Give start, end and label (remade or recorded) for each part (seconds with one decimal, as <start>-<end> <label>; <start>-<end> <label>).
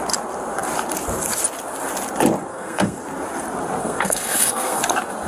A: 0.0-2.5 recorded; 2.5-3.0 remade; 3.0-3.8 recorded; 3.8-4.8 remade; 4.8-5.3 recorded